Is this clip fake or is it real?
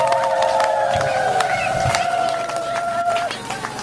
real